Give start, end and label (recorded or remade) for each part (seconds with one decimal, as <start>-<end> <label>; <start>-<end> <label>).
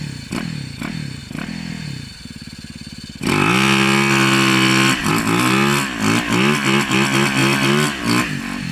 0.0-8.7 recorded